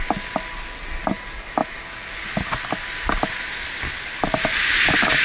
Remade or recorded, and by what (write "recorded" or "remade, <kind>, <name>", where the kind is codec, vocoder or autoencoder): recorded